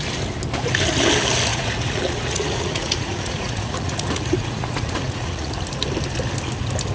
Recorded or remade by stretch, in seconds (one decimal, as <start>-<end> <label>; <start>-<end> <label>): 0.0-1.5 recorded; 1.5-5.5 remade; 5.5-6.9 recorded